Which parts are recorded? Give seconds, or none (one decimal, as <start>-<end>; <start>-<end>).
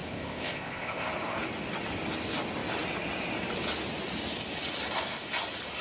1.1-5.8